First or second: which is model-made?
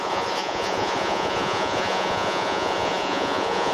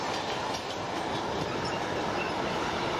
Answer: first